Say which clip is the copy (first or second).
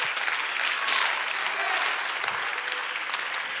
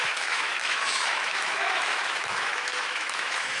second